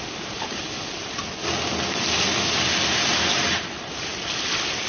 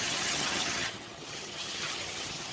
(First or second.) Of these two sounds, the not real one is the second